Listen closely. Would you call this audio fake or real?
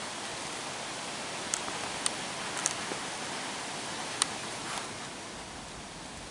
real